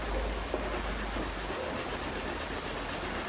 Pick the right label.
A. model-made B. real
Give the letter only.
B